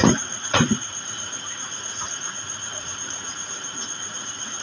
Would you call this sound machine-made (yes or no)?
yes